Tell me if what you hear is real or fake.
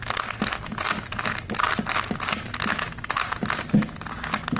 real